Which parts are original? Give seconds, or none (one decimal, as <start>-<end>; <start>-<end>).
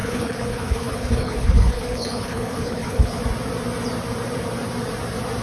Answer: 3.2-5.4